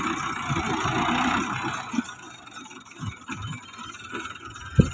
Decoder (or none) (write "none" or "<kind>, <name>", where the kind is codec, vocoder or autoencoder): none